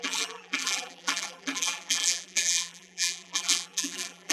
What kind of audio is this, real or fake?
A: fake